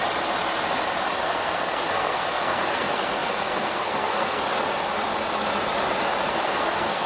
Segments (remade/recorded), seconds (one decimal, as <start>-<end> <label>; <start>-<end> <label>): 0.0-1.2 recorded; 1.2-4.4 remade; 4.4-6.3 recorded; 6.3-7.1 remade